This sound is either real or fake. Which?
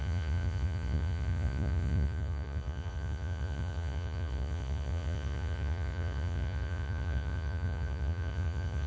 fake